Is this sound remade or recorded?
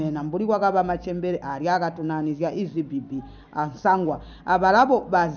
recorded